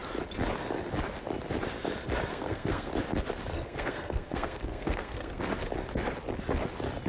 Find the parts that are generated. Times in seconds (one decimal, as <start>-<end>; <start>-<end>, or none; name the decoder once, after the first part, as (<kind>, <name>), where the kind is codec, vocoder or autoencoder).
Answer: 2.3-2.9 (codec, SNAC); 3.5-5.4